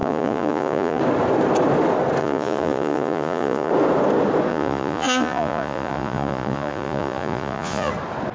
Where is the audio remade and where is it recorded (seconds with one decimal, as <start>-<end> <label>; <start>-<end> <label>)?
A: 0.0-1.0 remade; 1.0-2.2 recorded; 2.2-3.7 remade; 3.7-4.5 recorded; 4.5-7.9 remade; 7.9-8.3 recorded